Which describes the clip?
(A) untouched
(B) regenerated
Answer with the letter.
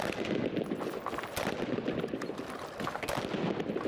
A